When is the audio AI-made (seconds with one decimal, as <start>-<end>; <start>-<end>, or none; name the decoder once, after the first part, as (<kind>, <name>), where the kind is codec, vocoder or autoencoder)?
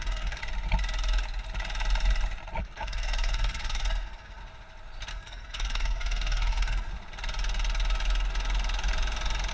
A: 0.0-0.4 (codec, SNAC); 2.6-4.4; 5.1-6.9